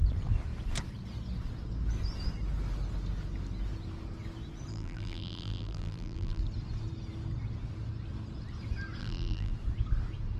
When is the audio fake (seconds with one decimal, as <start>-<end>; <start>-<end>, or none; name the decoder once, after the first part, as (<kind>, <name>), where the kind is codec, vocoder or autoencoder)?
4.7-6.4 (vocoder, BigVGAN v2); 9.0-9.5